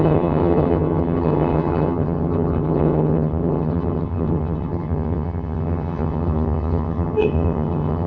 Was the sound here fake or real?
fake